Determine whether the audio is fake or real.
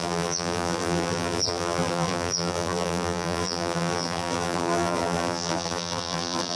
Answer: fake